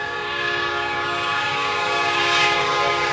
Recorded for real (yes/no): no